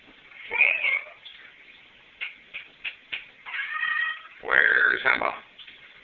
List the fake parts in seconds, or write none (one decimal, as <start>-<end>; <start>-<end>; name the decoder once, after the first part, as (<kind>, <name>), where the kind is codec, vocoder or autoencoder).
0.0-6.0 (vocoder, Vocos)